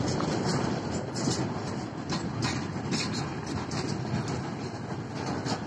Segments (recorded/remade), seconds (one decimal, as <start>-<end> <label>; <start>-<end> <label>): 0.0-5.7 recorded

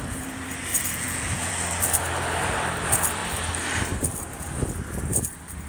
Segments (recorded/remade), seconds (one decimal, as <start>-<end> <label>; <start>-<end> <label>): 0.0-0.7 recorded; 0.7-1.5 remade; 1.5-5.7 recorded

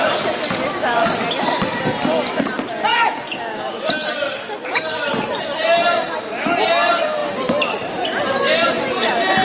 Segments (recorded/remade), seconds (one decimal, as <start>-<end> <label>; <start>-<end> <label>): 0.0-2.9 recorded; 2.9-3.8 remade; 3.8-9.4 recorded

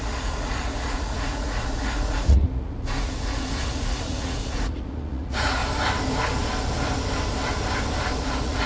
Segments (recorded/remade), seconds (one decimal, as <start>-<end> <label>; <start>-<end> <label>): 0.0-5.6 remade; 5.6-8.2 recorded; 8.2-8.7 remade

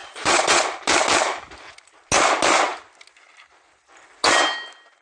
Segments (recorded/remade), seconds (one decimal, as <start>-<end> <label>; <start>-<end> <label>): 0.0-0.6 remade; 0.6-5.0 recorded

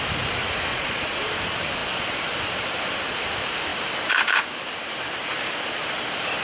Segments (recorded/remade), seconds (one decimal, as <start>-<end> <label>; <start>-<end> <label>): 0.0-0.7 recorded; 0.7-1.2 remade; 1.2-6.4 recorded

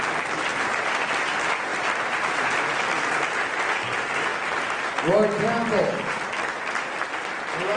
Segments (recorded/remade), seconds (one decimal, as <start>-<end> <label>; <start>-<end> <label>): 0.0-7.8 recorded